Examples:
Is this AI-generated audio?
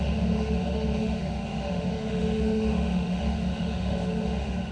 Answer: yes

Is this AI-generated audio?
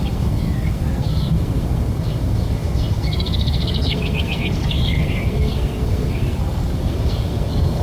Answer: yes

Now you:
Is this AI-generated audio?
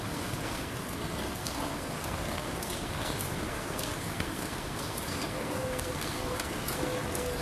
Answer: yes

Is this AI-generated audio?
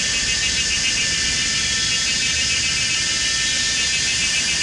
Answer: no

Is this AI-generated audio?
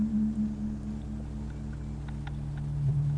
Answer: no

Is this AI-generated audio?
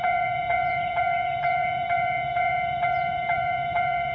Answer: yes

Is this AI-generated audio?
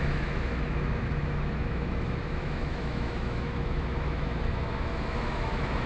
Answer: yes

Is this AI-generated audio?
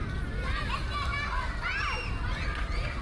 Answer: no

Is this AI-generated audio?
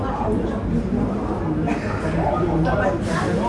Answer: no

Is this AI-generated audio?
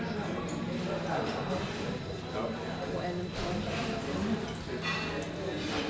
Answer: no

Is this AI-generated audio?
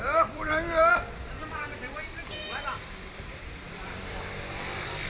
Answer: yes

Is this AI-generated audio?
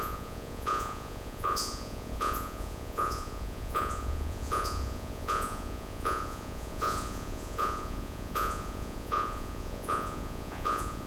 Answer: yes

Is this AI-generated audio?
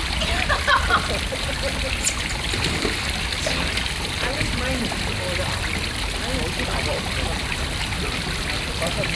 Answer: no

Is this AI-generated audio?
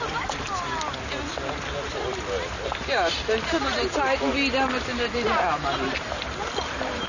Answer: no